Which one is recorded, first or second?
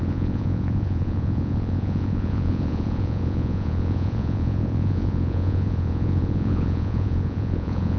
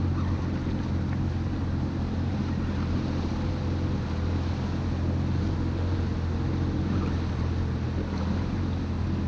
second